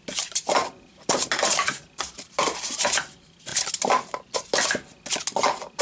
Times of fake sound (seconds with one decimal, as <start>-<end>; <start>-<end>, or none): none